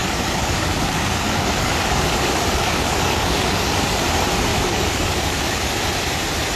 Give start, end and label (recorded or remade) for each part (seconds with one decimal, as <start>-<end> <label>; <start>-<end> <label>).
0.0-4.0 remade; 4.0-4.5 recorded; 4.5-5.7 remade; 5.7-6.6 recorded